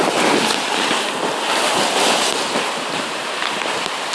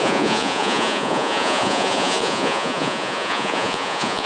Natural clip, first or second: first